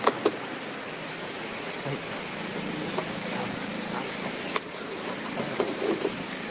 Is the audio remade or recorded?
recorded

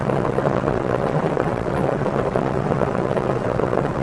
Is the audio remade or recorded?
remade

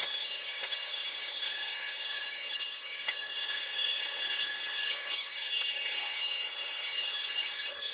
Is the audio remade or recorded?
remade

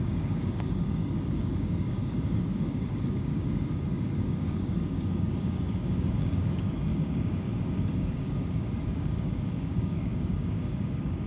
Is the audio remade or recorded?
remade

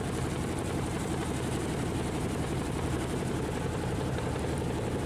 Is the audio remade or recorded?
remade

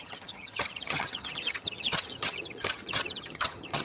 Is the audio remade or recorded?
remade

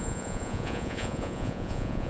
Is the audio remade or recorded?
remade